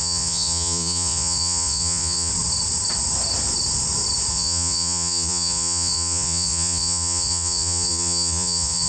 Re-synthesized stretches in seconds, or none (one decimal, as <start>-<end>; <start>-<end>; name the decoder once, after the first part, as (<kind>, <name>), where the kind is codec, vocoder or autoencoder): 0.0-2.3 (vocoder, Vocos); 4.3-8.9